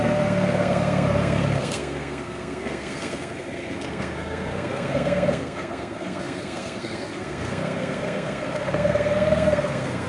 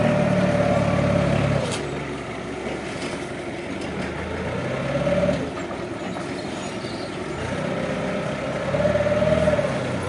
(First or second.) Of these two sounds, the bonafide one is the second